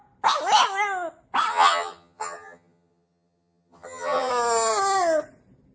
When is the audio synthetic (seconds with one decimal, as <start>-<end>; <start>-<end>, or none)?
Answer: 1.5-4.3